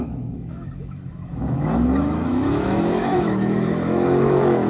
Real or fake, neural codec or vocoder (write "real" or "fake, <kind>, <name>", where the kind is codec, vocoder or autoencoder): fake, autoencoder, DAC-VAE